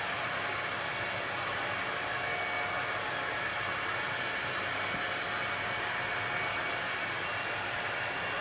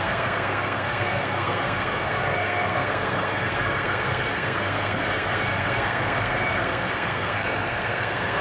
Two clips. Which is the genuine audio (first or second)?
first